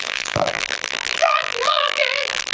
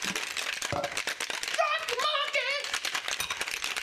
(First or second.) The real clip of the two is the second